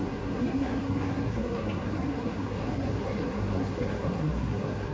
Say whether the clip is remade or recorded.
remade